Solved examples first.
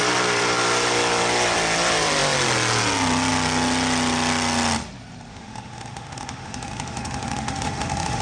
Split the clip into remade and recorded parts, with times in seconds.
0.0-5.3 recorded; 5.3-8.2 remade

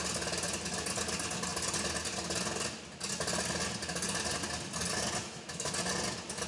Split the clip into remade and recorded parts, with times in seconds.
0.0-5.2 recorded; 5.2-5.7 remade; 5.7-6.5 recorded

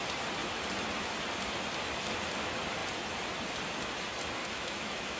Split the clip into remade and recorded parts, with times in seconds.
0.0-4.4 recorded; 4.4-5.2 remade

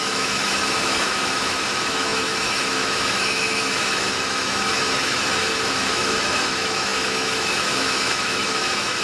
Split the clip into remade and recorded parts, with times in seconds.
0.0-9.0 remade

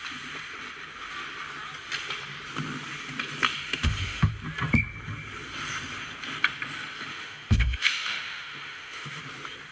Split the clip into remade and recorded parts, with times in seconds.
0.0-3.5 recorded; 3.5-4.3 remade; 4.3-7.1 recorded; 7.1-9.2 remade; 9.2-9.7 recorded

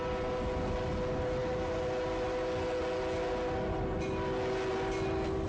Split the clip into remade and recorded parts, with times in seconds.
0.0-5.5 recorded